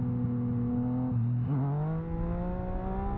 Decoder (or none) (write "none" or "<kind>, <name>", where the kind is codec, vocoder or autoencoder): none